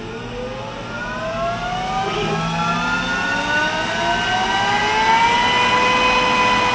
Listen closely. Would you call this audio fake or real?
real